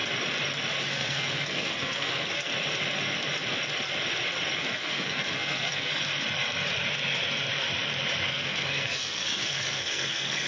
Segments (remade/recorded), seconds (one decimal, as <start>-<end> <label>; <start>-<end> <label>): 0.0-0.9 recorded; 0.9-2.5 remade; 2.5-4.7 recorded; 4.7-5.9 remade; 5.9-8.3 recorded; 8.3-10.5 remade